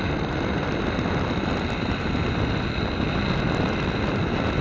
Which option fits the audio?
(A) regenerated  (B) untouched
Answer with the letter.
B